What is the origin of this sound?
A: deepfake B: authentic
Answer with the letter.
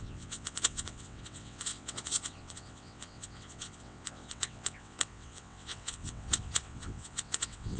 A